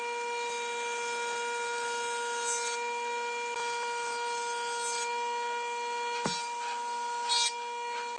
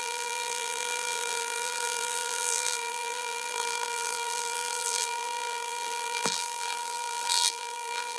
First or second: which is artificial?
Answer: second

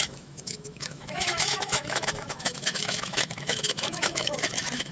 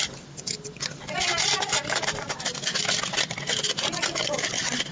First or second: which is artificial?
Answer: first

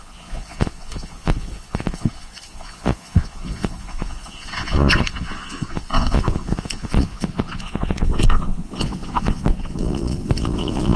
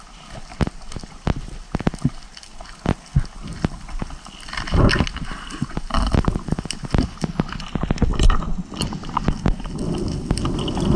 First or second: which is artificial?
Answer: first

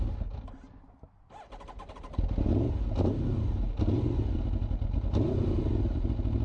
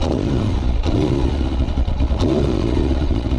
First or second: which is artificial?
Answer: second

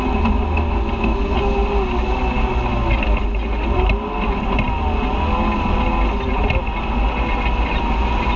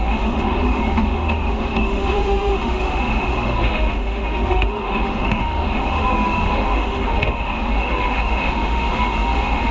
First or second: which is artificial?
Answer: second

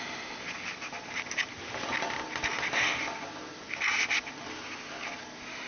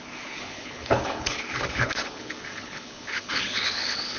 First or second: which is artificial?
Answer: second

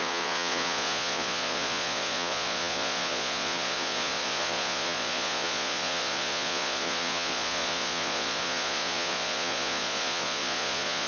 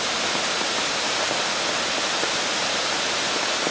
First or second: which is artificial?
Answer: first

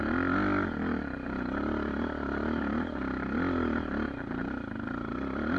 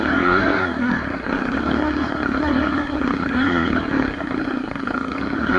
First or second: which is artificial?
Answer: second